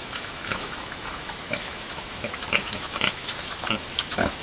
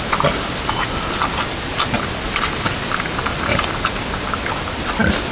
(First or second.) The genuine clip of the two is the second